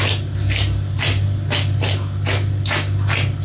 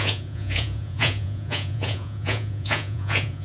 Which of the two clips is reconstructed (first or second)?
second